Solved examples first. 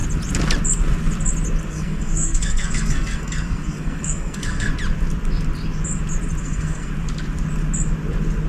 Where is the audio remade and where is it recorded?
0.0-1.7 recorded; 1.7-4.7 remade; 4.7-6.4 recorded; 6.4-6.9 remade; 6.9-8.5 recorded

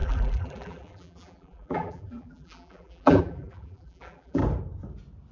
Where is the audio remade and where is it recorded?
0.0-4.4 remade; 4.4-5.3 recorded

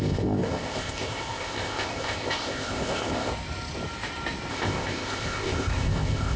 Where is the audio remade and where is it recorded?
0.0-3.3 remade; 3.3-4.5 recorded; 4.5-6.4 remade